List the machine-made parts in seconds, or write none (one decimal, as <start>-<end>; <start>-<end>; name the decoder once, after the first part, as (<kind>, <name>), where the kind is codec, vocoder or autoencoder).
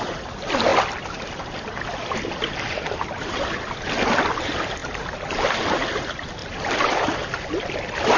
none